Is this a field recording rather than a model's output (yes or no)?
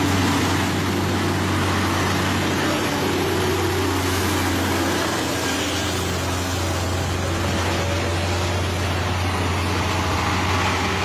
yes